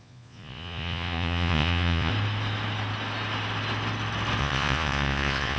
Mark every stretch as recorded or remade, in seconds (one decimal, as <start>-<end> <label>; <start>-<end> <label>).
0.0-2.1 remade; 2.1-4.4 recorded; 4.4-5.6 remade

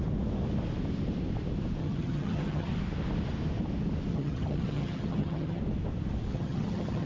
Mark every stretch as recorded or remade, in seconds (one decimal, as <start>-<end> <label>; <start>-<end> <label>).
0.0-1.8 recorded; 1.8-2.7 remade; 2.7-4.1 recorded; 4.1-5.6 remade; 5.6-6.3 recorded; 6.3-7.1 remade

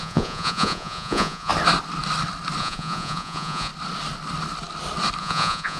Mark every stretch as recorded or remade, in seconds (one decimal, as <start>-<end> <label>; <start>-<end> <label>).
0.0-1.5 remade; 1.5-2.6 recorded; 2.6-3.7 remade; 3.7-5.2 recorded; 5.2-5.8 remade

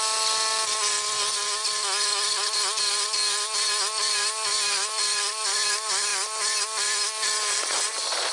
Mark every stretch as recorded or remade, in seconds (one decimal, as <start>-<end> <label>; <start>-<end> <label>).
0.0-8.3 recorded

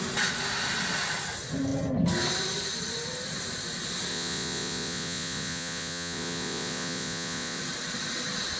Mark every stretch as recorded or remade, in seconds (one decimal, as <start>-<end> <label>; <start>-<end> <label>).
0.0-4.1 recorded; 4.1-7.6 remade; 7.6-8.6 recorded

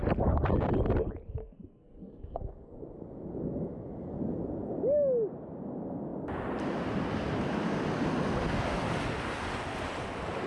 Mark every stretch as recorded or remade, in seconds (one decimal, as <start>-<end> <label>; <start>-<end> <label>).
0.0-1.4 recorded; 1.4-2.7 remade; 2.7-10.5 recorded

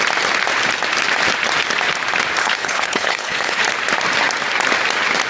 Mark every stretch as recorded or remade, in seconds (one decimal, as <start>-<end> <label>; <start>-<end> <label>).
0.0-2.4 recorded; 2.4-3.6 remade; 3.6-5.3 recorded